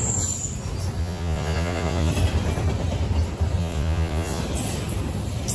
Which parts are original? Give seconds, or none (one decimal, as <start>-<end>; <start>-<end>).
0.0-1.0; 2.1-3.6; 4.4-5.5